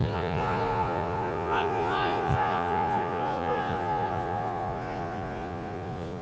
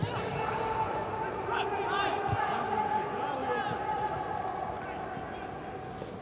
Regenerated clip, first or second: first